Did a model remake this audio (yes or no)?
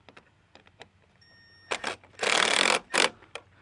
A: yes